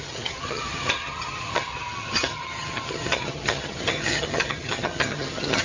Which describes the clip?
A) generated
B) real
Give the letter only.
A